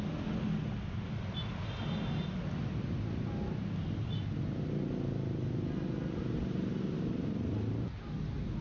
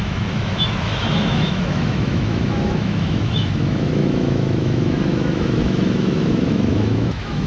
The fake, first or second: second